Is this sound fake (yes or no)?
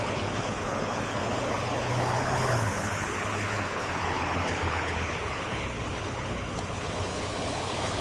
yes